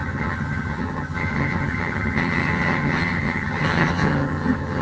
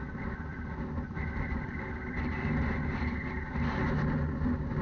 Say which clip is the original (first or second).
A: second